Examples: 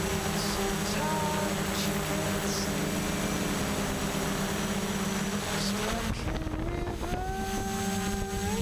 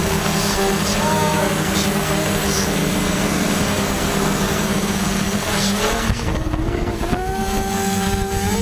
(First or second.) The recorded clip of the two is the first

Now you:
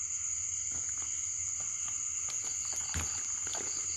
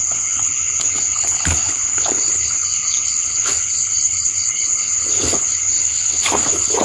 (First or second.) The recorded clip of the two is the first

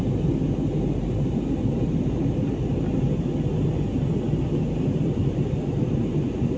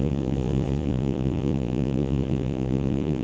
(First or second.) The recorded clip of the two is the first